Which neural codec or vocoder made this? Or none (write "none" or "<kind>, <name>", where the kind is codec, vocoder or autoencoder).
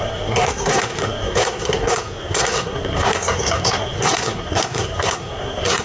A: codec, SNAC